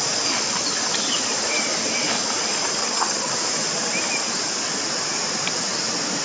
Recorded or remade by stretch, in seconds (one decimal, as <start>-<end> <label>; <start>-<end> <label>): 0.0-2.8 recorded; 2.8-3.3 remade; 3.3-6.2 recorded